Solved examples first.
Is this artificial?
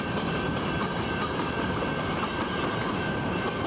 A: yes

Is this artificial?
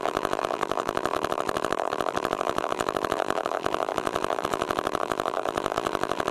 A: yes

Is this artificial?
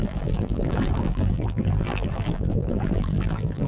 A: yes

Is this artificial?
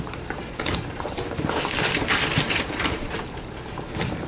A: yes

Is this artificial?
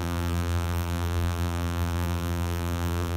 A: yes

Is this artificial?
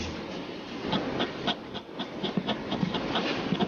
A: no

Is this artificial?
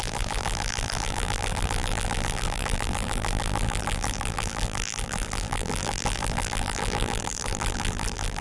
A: yes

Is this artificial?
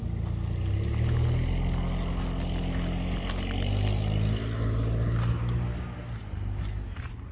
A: no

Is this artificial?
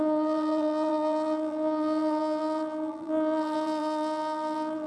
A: yes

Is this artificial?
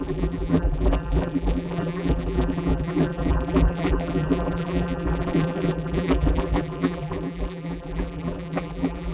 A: yes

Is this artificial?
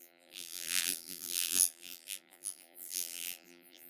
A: yes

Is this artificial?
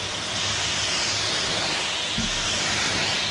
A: no